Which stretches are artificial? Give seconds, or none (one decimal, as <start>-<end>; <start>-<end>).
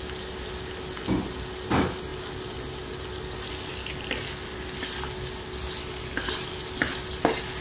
none